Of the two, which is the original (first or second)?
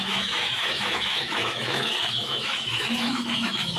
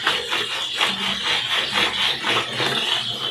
second